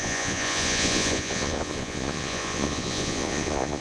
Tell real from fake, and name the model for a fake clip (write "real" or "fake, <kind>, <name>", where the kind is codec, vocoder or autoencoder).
fake, vocoder, Vocos